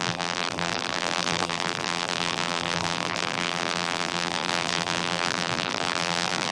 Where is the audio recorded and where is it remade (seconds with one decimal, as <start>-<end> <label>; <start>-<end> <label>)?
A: 0.0-6.5 remade